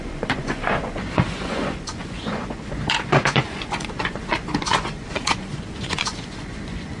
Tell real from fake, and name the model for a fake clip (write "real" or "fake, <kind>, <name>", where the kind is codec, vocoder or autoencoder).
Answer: fake, vocoder, Vocos